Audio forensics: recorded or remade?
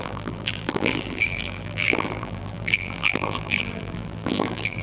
remade